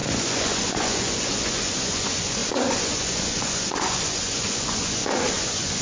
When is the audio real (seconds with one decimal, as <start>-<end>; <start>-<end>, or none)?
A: none